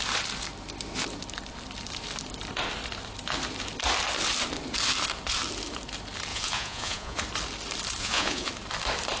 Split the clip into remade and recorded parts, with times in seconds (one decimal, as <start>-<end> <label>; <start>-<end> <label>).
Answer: 0.0-6.3 recorded; 6.3-7.2 remade; 7.2-8.0 recorded; 8.0-8.5 remade; 8.5-9.2 recorded